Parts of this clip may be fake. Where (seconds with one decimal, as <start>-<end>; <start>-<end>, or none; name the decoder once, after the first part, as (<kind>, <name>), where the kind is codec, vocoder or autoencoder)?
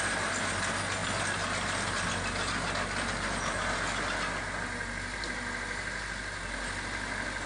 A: none